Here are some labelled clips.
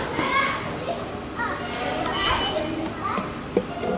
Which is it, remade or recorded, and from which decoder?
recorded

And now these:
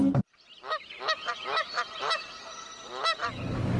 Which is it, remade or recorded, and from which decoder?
recorded